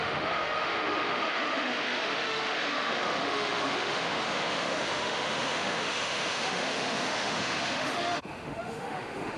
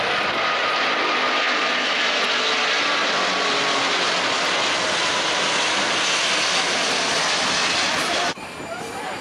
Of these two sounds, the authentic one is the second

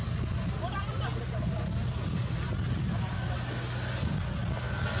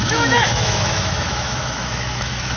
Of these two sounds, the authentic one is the first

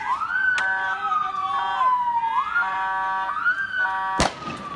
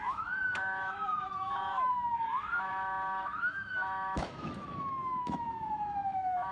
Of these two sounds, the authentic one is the first